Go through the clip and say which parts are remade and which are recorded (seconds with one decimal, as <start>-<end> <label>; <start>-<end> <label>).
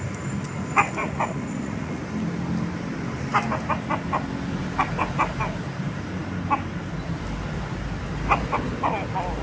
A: 0.0-1.0 recorded; 1.0-2.0 remade; 2.0-9.4 recorded